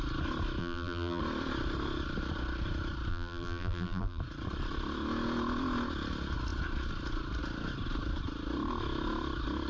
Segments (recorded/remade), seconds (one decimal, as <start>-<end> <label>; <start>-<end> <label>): 0.0-0.6 recorded; 0.6-1.2 remade; 1.2-3.1 recorded; 3.1-4.2 remade; 4.2-9.7 recorded